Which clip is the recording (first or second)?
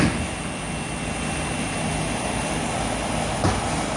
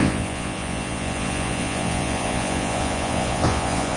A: first